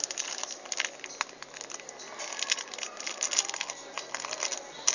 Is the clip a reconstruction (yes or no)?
no